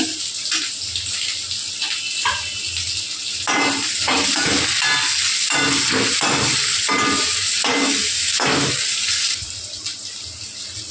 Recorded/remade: recorded